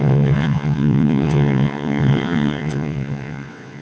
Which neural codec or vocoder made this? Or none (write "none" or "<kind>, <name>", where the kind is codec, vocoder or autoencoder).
vocoder, WaveNeXt